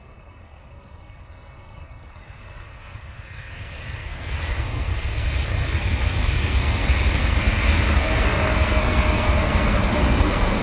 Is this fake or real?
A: fake